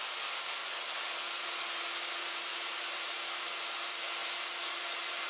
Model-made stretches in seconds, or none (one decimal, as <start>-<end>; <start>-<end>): 2.5-3.1; 4.2-5.3